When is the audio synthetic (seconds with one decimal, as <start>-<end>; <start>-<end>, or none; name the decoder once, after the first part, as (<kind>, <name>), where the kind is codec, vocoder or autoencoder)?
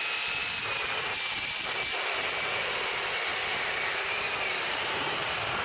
0.4-1.6 (vocoder, BigVGAN v2); 3.3-5.6